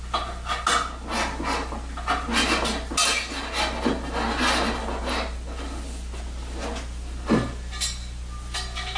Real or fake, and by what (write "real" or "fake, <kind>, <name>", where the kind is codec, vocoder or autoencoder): real